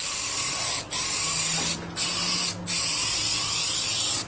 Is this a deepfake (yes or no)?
no